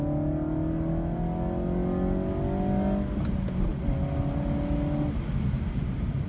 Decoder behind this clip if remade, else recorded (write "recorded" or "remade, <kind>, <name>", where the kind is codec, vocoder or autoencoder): recorded